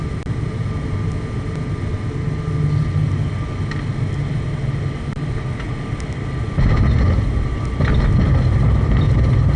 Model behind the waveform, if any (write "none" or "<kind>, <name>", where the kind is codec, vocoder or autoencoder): none